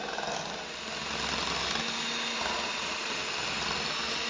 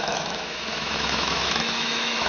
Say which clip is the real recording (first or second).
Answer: first